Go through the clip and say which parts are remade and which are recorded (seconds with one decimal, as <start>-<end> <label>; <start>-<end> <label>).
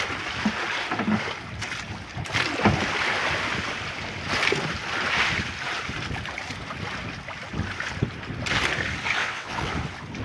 0.0-9.2 recorded; 9.2-9.7 remade; 9.7-10.2 recorded